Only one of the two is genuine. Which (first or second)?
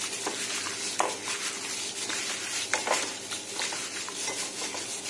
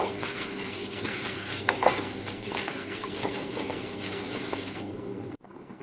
first